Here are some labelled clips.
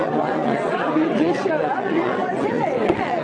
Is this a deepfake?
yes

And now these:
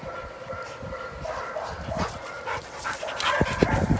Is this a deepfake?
no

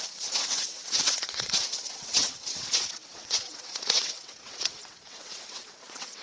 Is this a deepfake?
yes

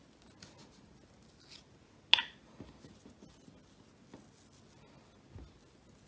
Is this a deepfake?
no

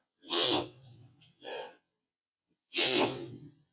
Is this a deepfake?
yes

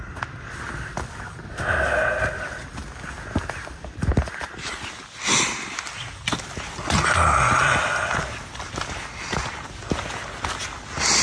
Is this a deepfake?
no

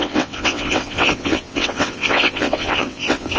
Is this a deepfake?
yes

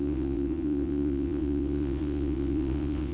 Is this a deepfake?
yes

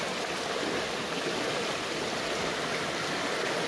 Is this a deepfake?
no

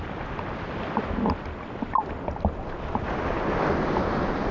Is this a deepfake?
no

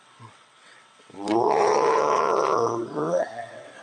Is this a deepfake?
yes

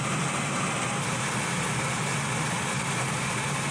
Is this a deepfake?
no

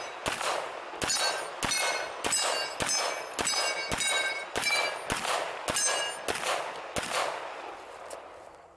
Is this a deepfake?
no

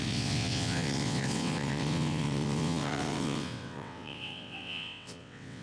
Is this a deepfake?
yes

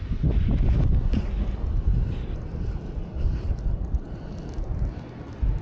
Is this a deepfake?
no